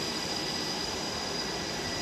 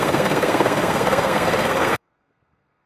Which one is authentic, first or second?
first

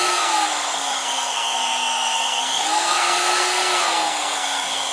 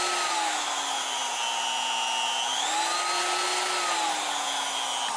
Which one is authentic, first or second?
second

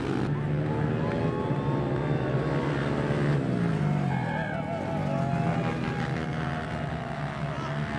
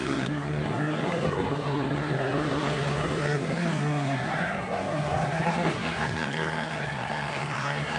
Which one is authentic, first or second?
first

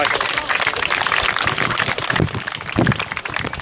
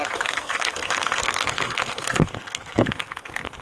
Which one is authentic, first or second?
first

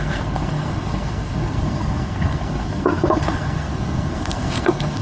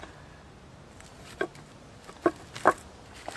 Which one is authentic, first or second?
second